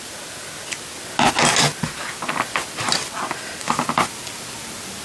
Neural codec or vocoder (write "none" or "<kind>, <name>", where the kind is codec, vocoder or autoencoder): none